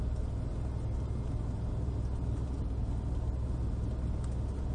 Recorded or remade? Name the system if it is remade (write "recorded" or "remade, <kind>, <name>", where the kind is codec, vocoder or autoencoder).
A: recorded